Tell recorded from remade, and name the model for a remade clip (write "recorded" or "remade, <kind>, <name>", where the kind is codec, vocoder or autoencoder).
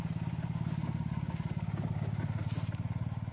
recorded